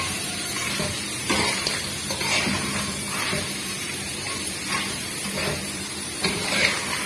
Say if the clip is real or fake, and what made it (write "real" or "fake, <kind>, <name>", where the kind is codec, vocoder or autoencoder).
fake, vocoder, BigVGAN v2